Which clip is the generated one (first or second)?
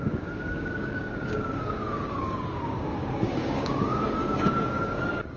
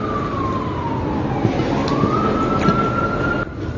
first